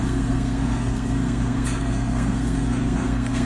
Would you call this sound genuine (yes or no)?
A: no